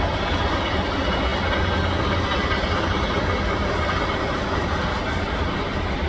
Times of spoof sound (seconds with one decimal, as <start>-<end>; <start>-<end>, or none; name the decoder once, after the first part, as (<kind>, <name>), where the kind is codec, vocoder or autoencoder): none